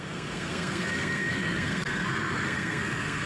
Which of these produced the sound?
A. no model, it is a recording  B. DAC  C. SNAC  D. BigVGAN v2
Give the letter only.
C